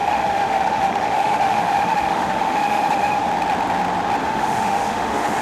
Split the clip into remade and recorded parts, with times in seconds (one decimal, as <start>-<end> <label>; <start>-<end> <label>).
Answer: 0.0-3.2 remade; 3.2-4.2 recorded; 4.2-5.4 remade